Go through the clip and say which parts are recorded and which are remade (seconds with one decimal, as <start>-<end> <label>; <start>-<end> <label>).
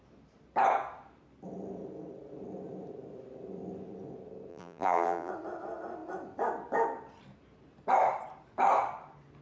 0.0-4.5 recorded; 4.5-5.3 remade; 5.3-9.4 recorded